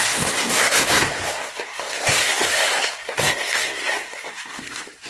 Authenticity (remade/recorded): remade